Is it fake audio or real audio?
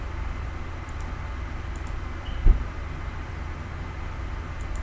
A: fake